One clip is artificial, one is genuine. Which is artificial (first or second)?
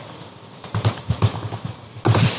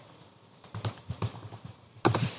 second